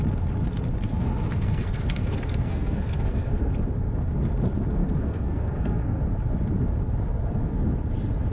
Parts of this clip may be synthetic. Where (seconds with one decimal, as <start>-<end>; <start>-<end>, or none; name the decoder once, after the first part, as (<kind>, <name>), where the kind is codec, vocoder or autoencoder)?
0.9-3.5 (codec, SNAC); 4.8-6.0